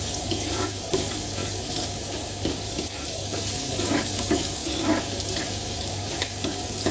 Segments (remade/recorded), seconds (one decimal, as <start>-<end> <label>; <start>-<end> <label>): 0.0-6.9 remade